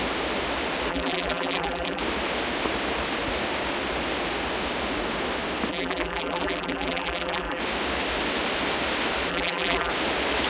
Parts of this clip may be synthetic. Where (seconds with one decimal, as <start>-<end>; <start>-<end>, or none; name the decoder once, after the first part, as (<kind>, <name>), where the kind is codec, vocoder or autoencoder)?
0.9-2.0 (vocoder, BigVGAN v2); 5.7-7.6; 9.3-9.9